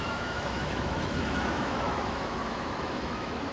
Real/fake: fake